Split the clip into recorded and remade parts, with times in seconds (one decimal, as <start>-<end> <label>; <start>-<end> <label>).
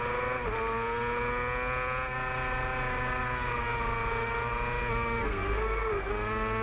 0.0-5.2 recorded; 5.2-6.1 remade; 6.1-6.6 recorded